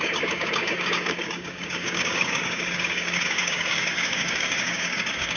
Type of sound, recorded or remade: remade